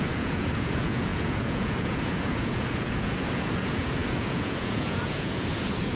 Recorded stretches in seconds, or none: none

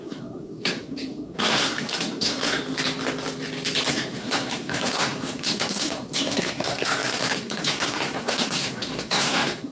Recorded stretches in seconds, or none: 2.6-3.9

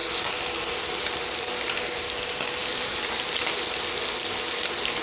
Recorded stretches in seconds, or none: 0.0-2.6; 3.3-5.0

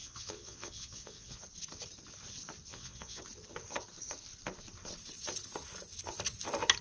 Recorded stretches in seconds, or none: 1.4-2.7; 3.2-6.8

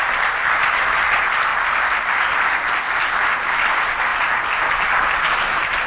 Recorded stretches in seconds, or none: 0.0-5.9